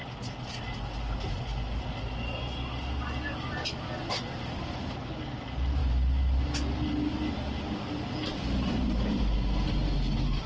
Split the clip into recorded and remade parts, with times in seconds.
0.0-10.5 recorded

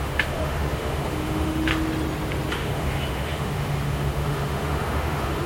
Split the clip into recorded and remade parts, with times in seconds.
0.0-1.7 remade; 1.7-2.5 recorded; 2.5-5.5 remade

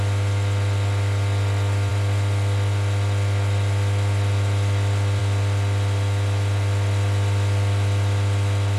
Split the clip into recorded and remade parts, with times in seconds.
0.0-8.8 recorded

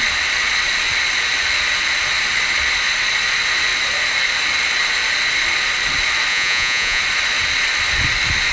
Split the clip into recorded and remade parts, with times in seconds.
0.0-6.3 recorded; 6.3-7.0 remade; 7.0-8.5 recorded

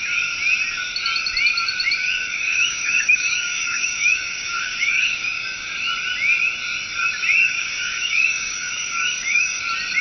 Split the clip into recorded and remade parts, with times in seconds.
0.0-2.0 recorded; 2.0-5.7 remade; 5.7-7.4 recorded; 7.4-9.6 remade; 9.6-10.0 recorded

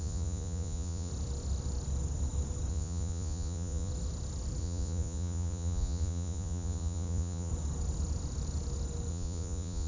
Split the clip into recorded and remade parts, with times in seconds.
0.0-1.1 remade; 1.1-2.7 recorded; 2.7-3.9 remade; 3.9-4.6 recorded; 4.6-7.5 remade; 7.5-9.1 recorded; 9.1-9.9 remade

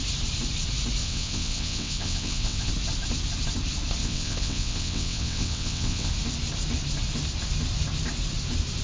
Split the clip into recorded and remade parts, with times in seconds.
0.0-1.0 recorded; 1.0-2.7 remade; 2.7-4.0 recorded; 4.0-6.1 remade; 6.1-8.8 recorded

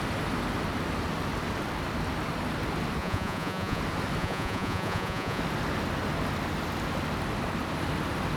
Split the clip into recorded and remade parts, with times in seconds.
0.0-3.0 recorded; 3.0-3.8 remade; 3.8-4.2 recorded; 4.2-5.4 remade; 5.4-8.4 recorded